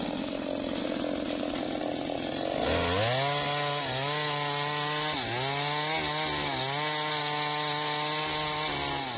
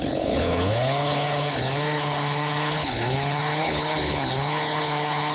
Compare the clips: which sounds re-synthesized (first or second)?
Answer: second